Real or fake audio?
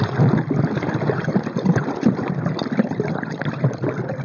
real